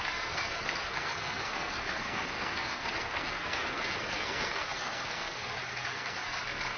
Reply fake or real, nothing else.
fake